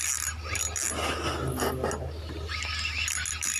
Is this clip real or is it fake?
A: real